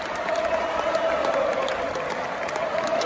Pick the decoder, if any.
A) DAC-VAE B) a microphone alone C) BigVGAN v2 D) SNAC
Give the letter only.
B